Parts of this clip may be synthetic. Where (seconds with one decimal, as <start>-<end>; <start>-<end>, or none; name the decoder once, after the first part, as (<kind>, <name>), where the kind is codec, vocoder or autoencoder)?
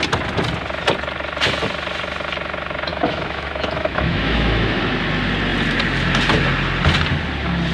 2.9-4.8 (autoencoder, DAC-VAE)